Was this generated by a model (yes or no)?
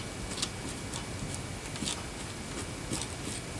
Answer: no